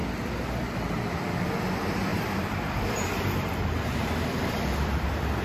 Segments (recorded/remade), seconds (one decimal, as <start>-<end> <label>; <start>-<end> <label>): 0.0-1.6 remade; 1.6-2.1 recorded; 2.1-5.4 remade